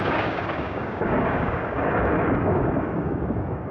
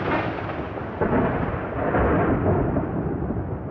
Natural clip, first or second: second